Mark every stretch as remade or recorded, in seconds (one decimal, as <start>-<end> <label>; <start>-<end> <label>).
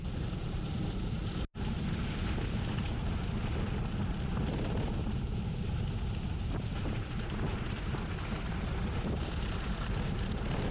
0.0-10.7 recorded